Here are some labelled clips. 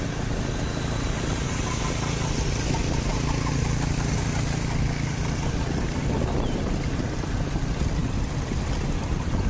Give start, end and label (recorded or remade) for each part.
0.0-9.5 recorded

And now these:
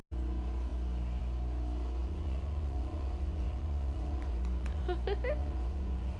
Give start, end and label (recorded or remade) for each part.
0.0-2.0 recorded; 2.0-4.8 remade; 4.8-5.4 recorded; 5.4-6.2 remade

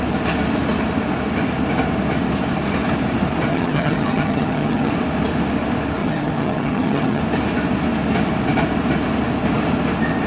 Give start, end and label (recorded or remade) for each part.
0.0-3.5 recorded; 3.5-4.9 remade; 4.9-6.0 recorded; 6.0-7.2 remade; 7.2-10.3 recorded

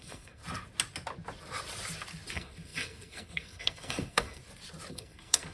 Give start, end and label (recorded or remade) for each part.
0.0-0.4 remade; 0.4-2.3 recorded; 2.3-4.4 remade; 4.4-4.9 recorded; 4.9-5.5 remade

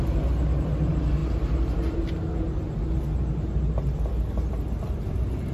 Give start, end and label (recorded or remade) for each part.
0.0-5.5 recorded

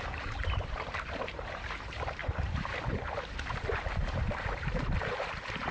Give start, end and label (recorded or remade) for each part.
0.0-5.7 remade

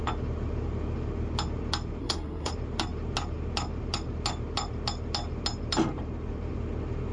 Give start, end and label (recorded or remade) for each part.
0.0-2.0 recorded; 2.0-2.5 remade; 2.5-7.1 recorded